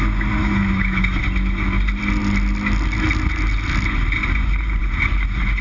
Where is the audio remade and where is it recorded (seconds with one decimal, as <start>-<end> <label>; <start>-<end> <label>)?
0.0-0.4 recorded; 0.4-1.2 remade; 1.2-5.6 recorded